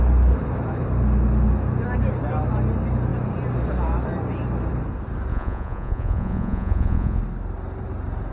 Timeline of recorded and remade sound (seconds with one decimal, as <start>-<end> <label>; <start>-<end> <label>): 0.0-5.3 recorded; 5.3-7.2 remade; 7.2-8.3 recorded